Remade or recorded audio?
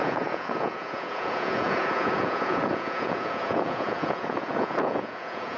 remade